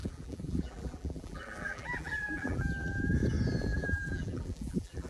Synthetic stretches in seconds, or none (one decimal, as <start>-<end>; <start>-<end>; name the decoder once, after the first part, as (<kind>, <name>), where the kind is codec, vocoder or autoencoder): 0.0-3.1 (vocoder, BigVGAN v2); 3.7-5.1